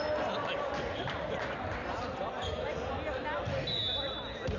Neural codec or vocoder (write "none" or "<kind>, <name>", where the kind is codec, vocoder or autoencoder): none